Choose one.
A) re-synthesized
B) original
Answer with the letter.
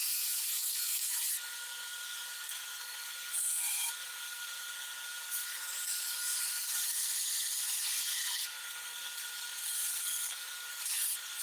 A